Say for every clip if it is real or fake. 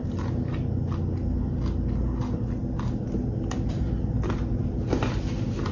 real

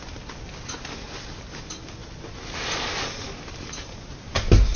real